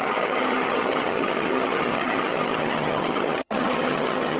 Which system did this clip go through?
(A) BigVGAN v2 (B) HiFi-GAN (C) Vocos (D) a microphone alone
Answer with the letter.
B